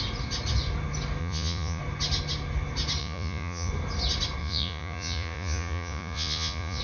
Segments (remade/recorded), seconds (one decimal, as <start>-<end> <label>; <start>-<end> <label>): 0.0-1.2 recorded; 1.2-1.8 remade; 1.8-3.0 recorded; 3.0-3.7 remade; 3.7-4.4 recorded; 4.4-6.8 remade